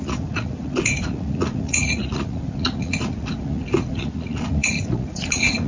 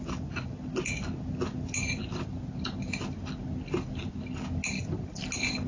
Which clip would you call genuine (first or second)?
second